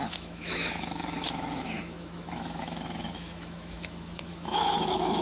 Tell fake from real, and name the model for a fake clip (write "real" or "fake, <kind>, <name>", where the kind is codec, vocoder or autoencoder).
fake, autoencoder, DAC-VAE